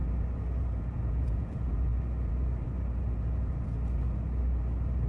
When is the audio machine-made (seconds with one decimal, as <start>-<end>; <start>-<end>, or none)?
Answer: 1.1-1.9